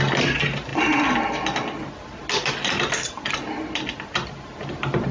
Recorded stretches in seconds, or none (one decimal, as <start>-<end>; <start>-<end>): 0.0-5.1